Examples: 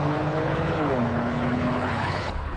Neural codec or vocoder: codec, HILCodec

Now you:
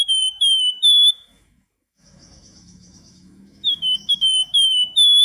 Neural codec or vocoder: autoencoder, DAC-VAE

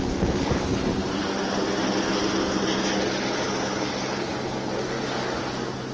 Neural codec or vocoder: none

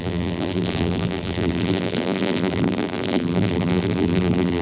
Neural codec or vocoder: vocoder, BigVGAN v2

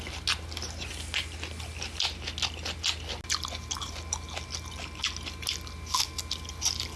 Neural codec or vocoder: none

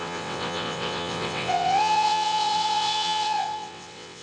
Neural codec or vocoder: vocoder, WaveNeXt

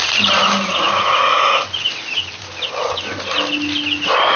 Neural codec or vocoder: none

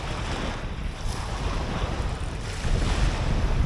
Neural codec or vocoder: none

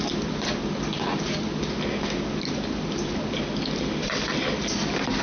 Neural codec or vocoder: none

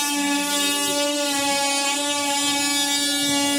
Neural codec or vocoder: none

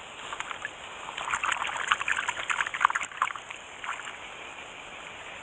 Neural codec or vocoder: none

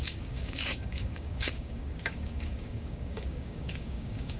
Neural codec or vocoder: codec, DAC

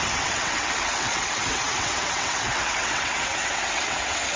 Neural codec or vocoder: vocoder, WaveNeXt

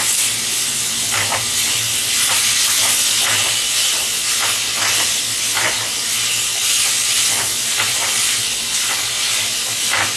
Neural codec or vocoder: none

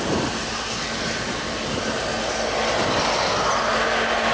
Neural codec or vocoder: none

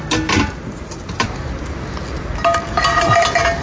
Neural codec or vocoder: none